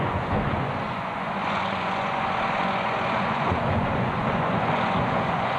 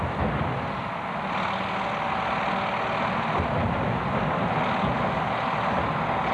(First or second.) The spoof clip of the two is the first